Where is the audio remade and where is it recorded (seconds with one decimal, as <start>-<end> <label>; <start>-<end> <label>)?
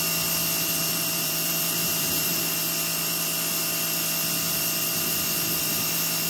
0.0-0.8 recorded; 0.8-2.4 remade; 2.4-6.3 recorded